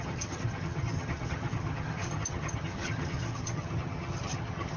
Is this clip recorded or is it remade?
remade